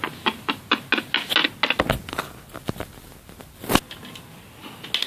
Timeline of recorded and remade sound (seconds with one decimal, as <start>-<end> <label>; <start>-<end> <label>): 0.0-5.1 recorded